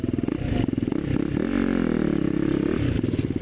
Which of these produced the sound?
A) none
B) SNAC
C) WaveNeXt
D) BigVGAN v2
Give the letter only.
A